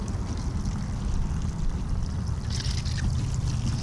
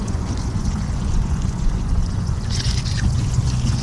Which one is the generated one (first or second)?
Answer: second